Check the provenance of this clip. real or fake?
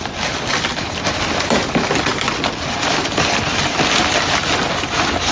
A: real